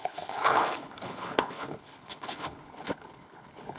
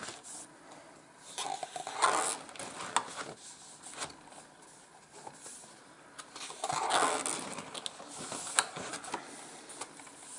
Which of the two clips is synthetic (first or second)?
first